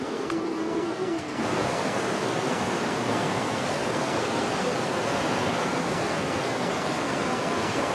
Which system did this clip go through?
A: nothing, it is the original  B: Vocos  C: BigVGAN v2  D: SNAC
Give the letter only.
D